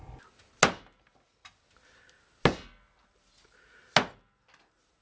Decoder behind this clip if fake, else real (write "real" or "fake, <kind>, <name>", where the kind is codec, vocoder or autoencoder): real